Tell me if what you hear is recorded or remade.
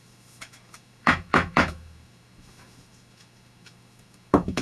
remade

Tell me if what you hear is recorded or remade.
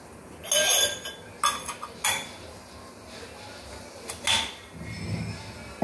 recorded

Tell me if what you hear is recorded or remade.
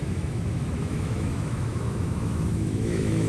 remade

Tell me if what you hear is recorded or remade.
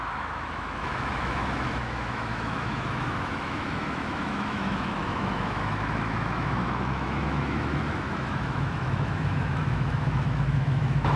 remade